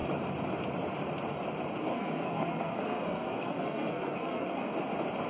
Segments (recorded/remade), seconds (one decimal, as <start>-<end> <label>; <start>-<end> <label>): 0.0-1.9 recorded; 1.9-4.7 remade; 4.7-5.3 recorded